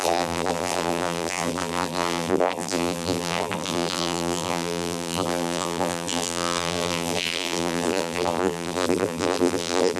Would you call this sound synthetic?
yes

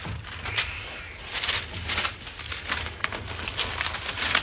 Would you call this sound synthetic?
no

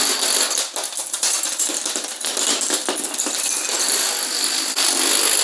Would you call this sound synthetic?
no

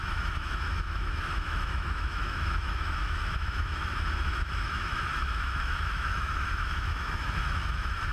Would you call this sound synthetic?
yes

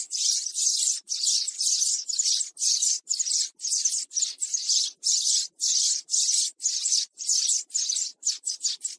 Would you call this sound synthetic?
yes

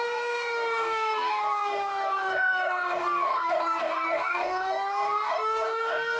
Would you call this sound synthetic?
yes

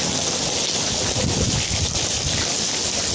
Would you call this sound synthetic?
no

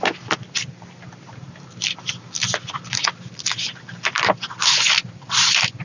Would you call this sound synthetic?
no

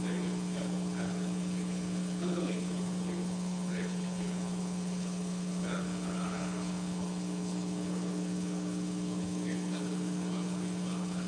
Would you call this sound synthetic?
yes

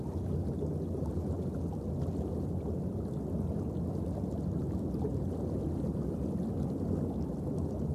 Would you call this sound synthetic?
no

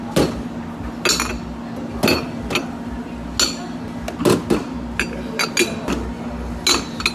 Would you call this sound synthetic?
no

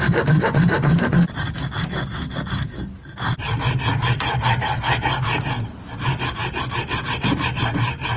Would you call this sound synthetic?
no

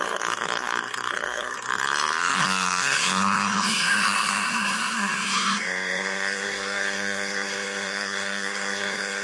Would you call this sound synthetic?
yes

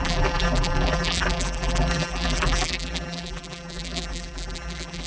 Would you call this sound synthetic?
yes